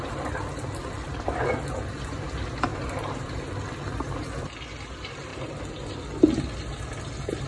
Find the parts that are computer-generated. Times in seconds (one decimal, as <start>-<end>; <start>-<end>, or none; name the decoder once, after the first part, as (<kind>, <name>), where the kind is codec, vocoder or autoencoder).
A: 2.7-3.5 (vocoder, BigVGAN v2); 5.3-6.0